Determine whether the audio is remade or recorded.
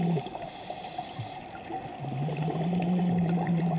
recorded